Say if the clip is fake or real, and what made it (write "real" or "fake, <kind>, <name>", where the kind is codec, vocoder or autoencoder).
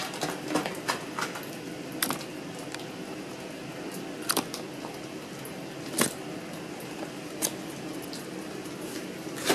real